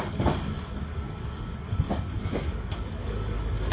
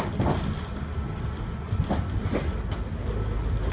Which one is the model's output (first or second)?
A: first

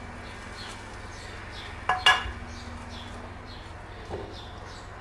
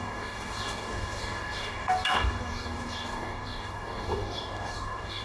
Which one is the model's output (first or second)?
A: second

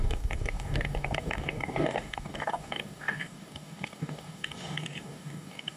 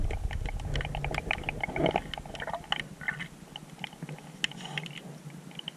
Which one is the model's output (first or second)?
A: first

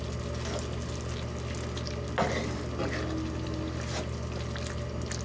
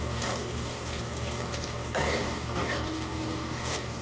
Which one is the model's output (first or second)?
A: second